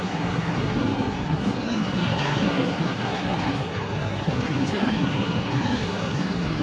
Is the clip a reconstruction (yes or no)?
yes